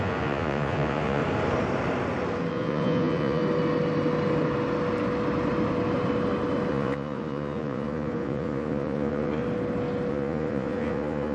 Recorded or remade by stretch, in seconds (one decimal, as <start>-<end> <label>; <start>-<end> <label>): 0.0-1.2 remade; 1.2-2.5 recorded; 2.5-3.4 remade; 3.4-6.7 recorded; 6.7-9.4 remade; 9.4-10.1 recorded; 10.1-11.3 remade